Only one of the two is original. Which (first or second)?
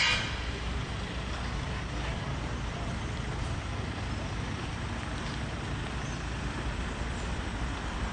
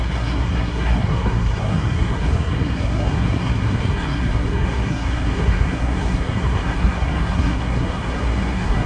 first